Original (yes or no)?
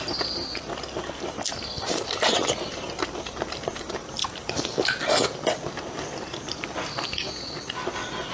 yes